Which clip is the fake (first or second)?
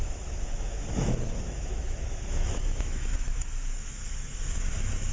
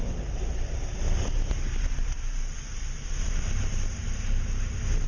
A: first